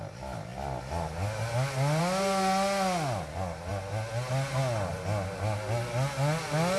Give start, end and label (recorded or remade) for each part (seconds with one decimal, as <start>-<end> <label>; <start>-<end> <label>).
0.0-6.8 recorded